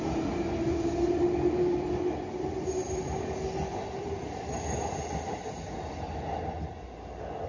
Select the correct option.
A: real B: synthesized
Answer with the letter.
A